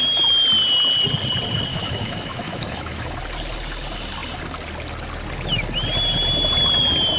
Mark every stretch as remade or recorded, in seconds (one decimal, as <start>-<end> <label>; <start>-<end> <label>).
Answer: 0.0-1.7 recorded; 1.7-3.2 remade; 3.2-7.2 recorded

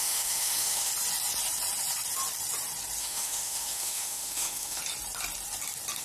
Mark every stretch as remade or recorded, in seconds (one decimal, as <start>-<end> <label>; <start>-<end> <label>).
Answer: 0.0-0.9 remade; 0.9-3.0 recorded; 3.0-4.8 remade; 4.8-6.0 recorded

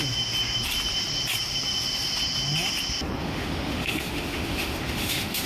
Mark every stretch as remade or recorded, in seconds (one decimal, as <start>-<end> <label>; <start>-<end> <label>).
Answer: 0.0-3.2 recorded; 3.2-5.5 remade

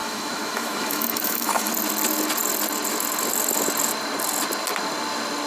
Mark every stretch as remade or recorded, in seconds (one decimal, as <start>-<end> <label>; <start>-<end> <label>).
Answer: 0.0-1.7 remade; 1.7-5.5 recorded